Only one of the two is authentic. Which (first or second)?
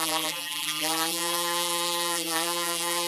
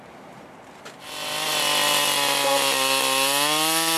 second